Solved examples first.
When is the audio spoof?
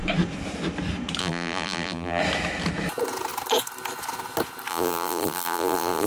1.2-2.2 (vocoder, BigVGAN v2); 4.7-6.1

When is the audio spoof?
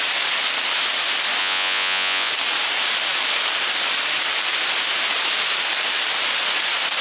1.4-2.3 (vocoder, Vocos)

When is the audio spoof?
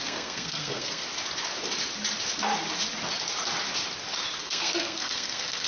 0.0-1.0 (codec, SNAC); 4.4-5.7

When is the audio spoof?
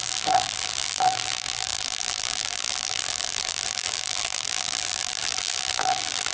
0.0-6.3 (vocoder, BigVGAN v2)